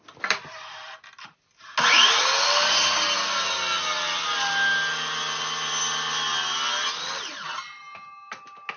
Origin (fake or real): real